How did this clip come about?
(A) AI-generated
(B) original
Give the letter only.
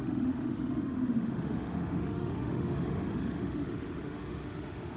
A